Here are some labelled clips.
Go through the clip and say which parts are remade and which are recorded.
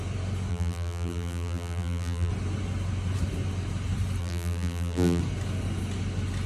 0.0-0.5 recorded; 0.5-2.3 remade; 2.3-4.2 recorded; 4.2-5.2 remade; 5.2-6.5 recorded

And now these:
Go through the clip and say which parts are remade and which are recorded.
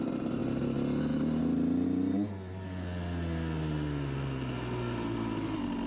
0.0-5.9 recorded